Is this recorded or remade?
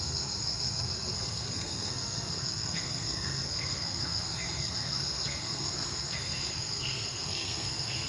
remade